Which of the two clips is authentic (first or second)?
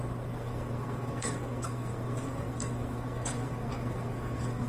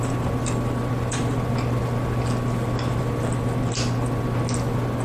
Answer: second